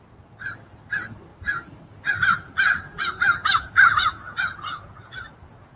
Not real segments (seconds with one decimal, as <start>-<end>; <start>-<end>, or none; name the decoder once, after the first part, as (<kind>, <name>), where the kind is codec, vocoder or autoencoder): 3.4-5.8 (vocoder, Vocos)